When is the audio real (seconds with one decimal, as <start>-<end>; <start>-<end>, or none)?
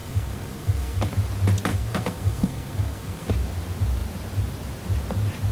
1.1-1.7; 3.3-5.5